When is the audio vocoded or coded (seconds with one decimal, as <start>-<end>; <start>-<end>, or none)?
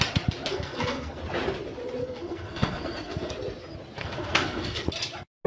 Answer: 0.5-1.2; 2.0-3.3; 4.0-4.9